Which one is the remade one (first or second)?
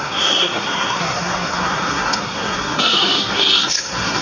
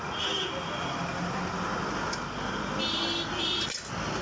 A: first